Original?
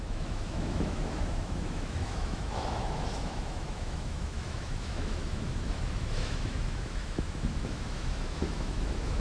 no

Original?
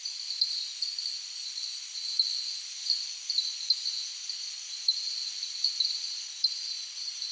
no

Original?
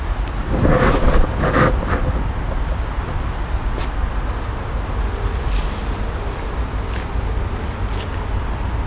yes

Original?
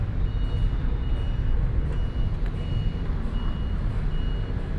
yes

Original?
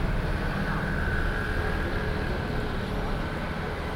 yes